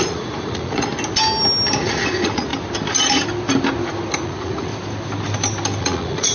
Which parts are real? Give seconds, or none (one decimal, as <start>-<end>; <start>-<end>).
0.9-1.8; 2.5-4.2; 4.7-5.8